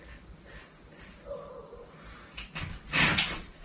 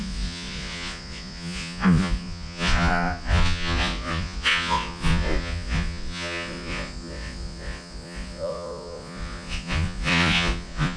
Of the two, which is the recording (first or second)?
first